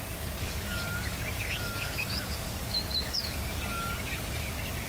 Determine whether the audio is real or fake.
fake